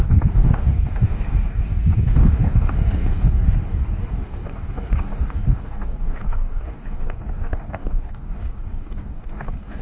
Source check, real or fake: fake